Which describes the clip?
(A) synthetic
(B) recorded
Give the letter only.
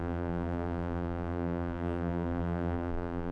A